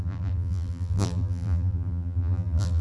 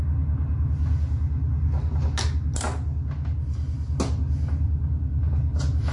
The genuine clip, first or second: second